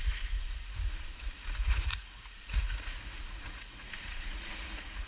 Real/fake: fake